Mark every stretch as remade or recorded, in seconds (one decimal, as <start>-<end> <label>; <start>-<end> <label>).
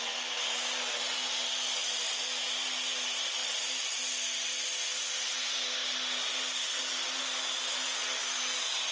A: 0.0-8.9 recorded